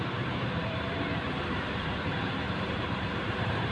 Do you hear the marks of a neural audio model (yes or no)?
yes